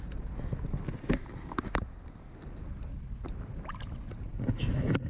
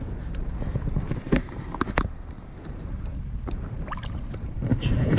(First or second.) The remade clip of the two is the second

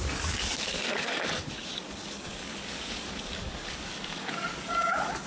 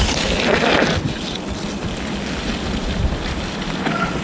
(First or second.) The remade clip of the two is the first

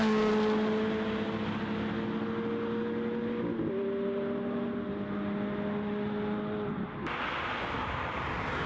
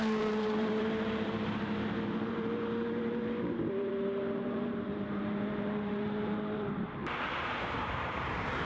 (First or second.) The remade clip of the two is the second